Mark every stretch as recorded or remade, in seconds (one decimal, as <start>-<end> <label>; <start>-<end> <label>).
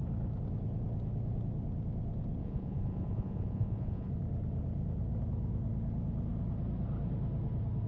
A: 0.0-2.4 recorded; 2.4-4.1 remade; 4.1-7.9 recorded